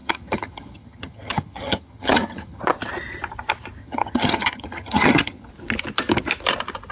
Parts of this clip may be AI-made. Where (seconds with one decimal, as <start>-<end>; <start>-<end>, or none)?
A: 0.0-2.6; 3.8-5.5